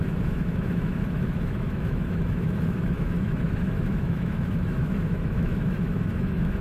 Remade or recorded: remade